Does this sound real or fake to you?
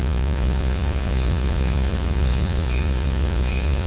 fake